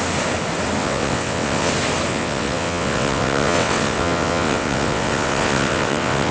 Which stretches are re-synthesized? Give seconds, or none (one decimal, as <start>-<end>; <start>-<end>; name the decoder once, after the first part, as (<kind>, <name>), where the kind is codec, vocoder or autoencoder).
0.8-1.7 (vocoder, WaveNeXt); 2.1-6.3